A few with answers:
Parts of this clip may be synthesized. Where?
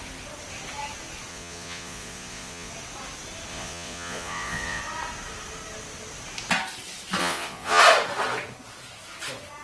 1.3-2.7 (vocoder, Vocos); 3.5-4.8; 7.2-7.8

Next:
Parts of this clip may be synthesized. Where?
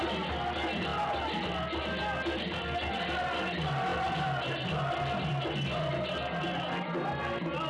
none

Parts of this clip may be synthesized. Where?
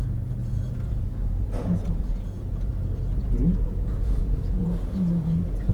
0.0-2.7 (vocoder, Vocos); 3.2-5.7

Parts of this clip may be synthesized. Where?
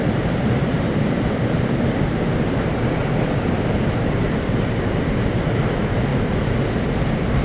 0.0-3.0 (vocoder, BigVGAN v2); 4.3-6.1; 6.9-7.4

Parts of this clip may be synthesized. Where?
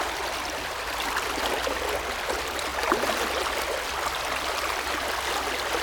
none